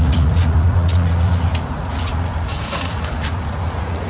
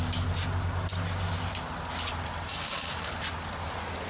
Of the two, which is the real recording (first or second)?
second